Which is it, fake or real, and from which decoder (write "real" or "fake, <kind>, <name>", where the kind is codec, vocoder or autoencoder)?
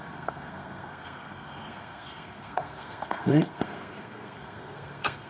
fake, codec, SNAC